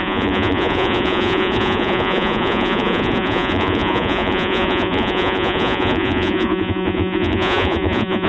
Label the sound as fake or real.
fake